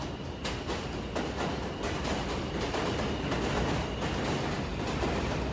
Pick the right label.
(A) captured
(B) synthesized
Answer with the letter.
A